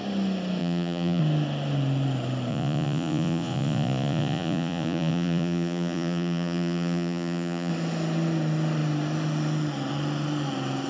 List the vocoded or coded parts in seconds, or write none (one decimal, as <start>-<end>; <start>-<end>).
0.6-1.2; 2.5-7.7